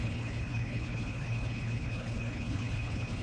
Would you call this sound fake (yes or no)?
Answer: yes